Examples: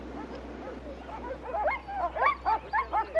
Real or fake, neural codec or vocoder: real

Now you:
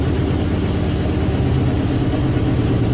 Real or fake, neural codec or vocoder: real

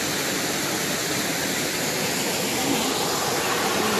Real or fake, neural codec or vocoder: real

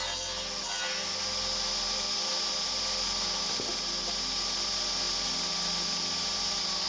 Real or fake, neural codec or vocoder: real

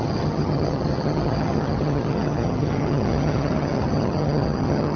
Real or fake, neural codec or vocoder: fake, vocoder, HiFi-GAN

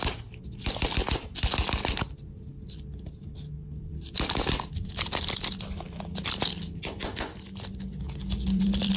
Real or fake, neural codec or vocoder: real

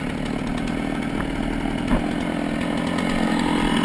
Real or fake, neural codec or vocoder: real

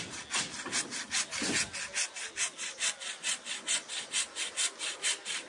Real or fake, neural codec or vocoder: real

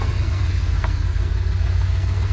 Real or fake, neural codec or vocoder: fake, codec, SNAC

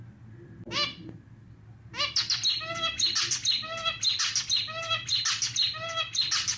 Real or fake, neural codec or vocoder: real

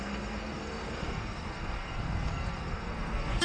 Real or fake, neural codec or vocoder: fake, codec, SNAC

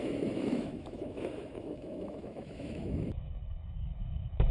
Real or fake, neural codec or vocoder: fake, autoencoder, DAC-VAE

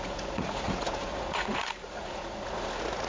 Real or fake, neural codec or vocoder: fake, vocoder, Vocos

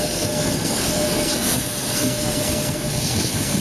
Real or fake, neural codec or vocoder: fake, codec, SNAC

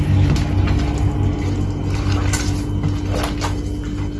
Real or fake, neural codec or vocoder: real